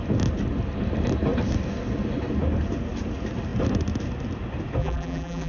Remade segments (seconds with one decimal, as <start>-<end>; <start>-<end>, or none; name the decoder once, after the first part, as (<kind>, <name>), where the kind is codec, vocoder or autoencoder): 4.8-5.5 (vocoder, BigVGAN v2)